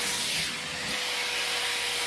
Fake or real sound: real